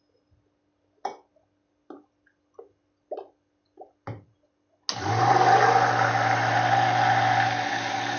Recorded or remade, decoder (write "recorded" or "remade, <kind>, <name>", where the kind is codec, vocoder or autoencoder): recorded